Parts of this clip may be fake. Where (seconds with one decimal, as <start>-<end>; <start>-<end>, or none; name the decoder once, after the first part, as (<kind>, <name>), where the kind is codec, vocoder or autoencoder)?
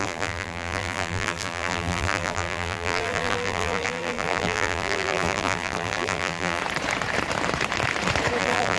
0.0-6.6 (vocoder, BigVGAN v2); 8.4-8.8